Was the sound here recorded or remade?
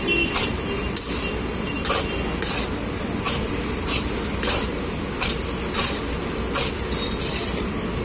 recorded